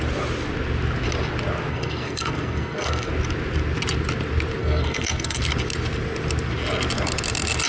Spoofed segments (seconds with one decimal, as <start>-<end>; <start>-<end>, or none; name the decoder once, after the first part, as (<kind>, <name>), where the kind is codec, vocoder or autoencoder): 1.7-3.1 (codec, SNAC); 4.6-5.4